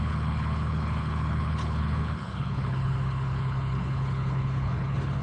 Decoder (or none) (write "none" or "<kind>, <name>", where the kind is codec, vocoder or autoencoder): codec, HILCodec